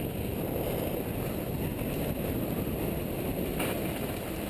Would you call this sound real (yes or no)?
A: yes